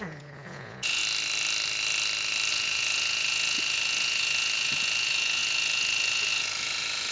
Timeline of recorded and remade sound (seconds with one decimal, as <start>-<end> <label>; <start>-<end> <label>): 0.0-1.0 remade; 1.0-2.5 recorded; 2.5-7.1 remade